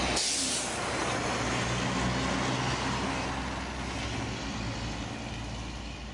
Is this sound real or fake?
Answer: real